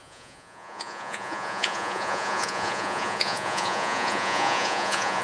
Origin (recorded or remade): remade